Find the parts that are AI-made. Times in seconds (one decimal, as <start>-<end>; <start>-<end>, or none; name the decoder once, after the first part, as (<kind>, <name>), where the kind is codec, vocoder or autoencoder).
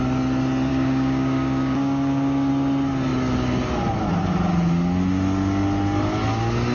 0.7-2.5 (codec, DAC)